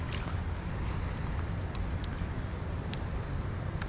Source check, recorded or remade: remade